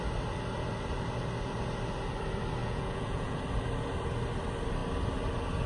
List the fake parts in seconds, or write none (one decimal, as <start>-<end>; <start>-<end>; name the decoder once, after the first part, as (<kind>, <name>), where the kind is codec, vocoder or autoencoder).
2.6-3.4 (vocoder, Vocos)